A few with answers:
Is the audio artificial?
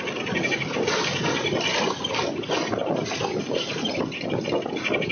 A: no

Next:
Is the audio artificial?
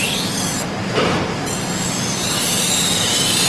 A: no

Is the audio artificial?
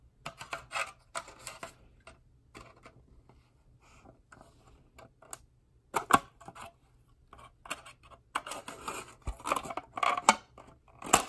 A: no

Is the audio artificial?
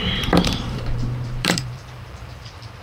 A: yes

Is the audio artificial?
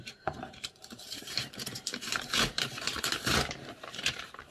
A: yes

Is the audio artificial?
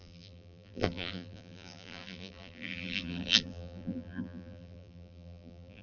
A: yes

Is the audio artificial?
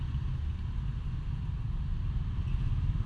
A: no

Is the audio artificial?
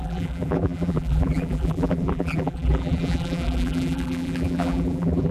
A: yes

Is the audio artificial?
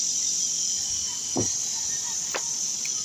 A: no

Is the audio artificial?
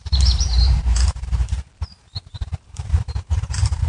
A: yes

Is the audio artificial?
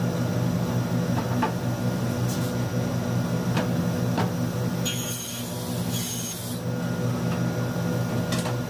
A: no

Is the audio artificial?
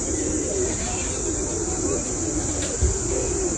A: no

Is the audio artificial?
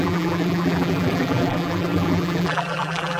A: yes